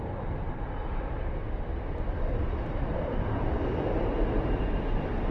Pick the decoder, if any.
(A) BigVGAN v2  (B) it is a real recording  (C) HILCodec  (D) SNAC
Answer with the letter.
B